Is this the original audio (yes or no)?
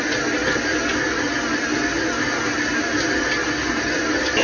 yes